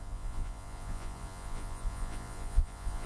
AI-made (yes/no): yes